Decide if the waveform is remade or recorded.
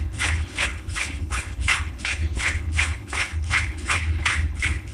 remade